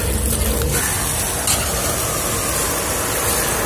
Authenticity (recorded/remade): recorded